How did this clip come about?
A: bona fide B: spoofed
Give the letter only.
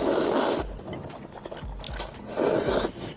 A